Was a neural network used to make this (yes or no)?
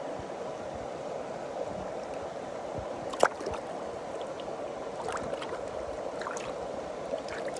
no